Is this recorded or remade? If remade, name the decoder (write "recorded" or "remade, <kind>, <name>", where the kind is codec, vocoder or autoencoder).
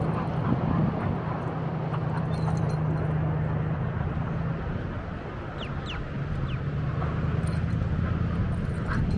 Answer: recorded